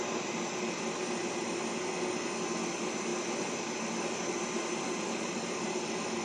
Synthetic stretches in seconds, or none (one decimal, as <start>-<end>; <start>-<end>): none